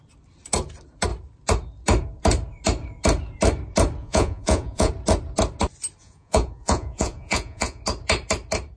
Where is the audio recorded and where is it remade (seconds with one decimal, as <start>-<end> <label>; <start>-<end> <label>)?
0.0-4.0 recorded; 4.0-4.9 remade; 4.9-6.0 recorded; 6.0-7.8 remade; 7.8-8.8 recorded